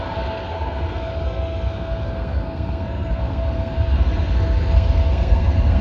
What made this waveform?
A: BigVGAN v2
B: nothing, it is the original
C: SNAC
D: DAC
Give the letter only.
C